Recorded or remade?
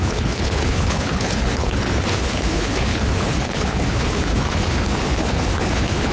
remade